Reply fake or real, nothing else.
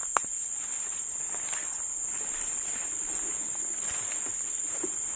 real